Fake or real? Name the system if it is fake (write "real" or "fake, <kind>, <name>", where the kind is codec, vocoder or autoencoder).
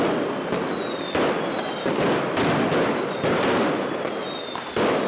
real